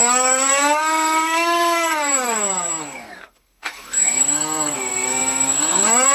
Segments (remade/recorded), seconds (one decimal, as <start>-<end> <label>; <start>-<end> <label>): 0.0-6.1 remade